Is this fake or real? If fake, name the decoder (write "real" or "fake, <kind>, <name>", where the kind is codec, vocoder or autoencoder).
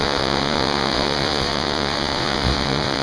fake, vocoder, WaveNeXt